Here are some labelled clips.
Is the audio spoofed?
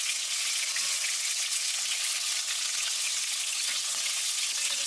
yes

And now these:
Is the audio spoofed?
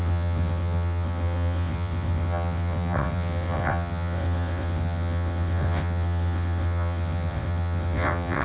yes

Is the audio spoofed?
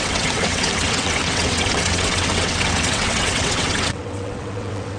yes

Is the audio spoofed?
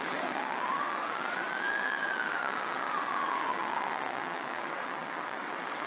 yes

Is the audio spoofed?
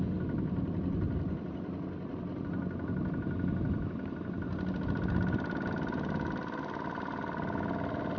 no